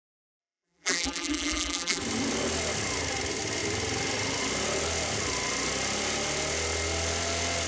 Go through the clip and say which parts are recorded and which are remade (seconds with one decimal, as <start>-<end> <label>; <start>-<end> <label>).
0.0-0.4 recorded; 0.4-2.0 remade; 2.0-7.7 recorded